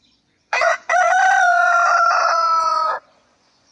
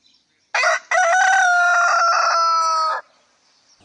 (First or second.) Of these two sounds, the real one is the second